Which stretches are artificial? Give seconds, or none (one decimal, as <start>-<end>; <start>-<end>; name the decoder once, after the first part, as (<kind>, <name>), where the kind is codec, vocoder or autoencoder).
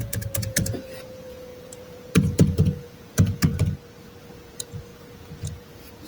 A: 0.0-3.5 (vocoder, Vocos); 4.2-6.1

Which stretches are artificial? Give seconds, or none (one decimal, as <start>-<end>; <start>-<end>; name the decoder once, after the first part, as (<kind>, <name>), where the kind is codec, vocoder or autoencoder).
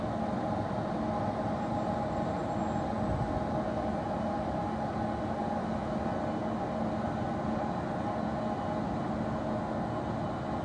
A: none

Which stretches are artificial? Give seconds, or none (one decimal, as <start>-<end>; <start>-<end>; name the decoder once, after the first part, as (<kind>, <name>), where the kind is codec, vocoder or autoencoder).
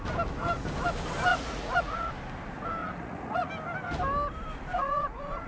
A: 1.3-2.1 (vocoder, Vocos); 2.8-3.5; 4.7-5.5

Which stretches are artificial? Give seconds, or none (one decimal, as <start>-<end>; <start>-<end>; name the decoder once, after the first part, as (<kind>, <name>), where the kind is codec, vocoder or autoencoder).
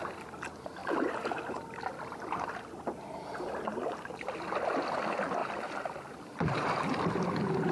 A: 0.8-1.4 (vocoder, BigVGAN v2); 5.4-6.9